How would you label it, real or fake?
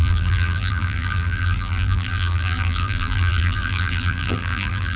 fake